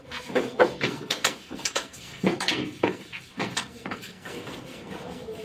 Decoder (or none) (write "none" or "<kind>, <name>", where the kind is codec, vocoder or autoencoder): codec, SNAC